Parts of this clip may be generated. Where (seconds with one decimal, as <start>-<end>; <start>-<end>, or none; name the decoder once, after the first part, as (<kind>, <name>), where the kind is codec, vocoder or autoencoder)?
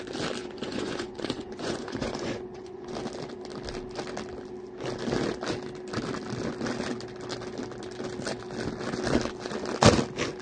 0.4-2.9 (vocoder, Vocos)